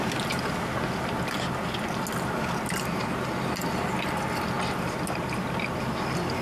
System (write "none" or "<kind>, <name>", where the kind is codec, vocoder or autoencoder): none